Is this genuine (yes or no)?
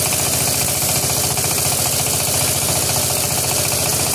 yes